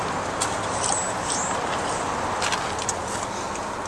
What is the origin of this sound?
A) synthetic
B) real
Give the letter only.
B